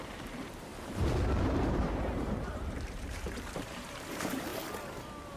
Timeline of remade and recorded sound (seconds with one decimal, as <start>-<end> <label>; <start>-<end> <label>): 0.0-0.7 remade; 0.7-1.4 recorded; 1.4-4.5 remade; 4.5-5.4 recorded